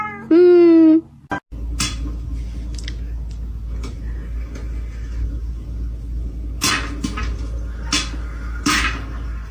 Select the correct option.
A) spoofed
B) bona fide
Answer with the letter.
B